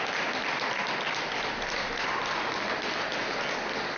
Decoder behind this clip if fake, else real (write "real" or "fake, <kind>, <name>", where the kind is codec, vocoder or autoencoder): real